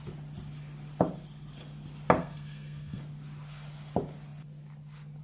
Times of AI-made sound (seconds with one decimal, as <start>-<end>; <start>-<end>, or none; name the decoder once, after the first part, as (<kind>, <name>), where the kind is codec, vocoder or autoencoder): 2.2-3.0 (codec, SNAC)